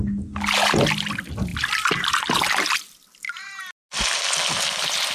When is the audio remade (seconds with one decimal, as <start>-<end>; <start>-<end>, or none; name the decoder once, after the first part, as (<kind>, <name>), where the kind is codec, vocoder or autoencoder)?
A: none